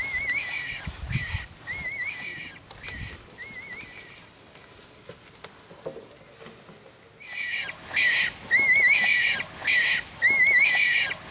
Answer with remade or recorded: recorded